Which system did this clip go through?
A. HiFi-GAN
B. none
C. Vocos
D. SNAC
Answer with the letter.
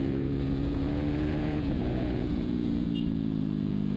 C